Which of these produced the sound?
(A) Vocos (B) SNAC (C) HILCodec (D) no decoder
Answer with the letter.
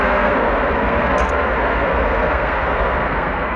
B